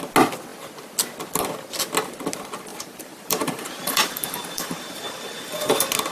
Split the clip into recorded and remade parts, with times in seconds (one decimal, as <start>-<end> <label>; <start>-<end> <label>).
0.0-2.7 recorded; 2.7-5.6 remade; 5.6-6.1 recorded